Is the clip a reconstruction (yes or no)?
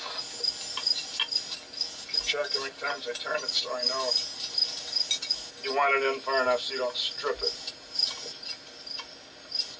no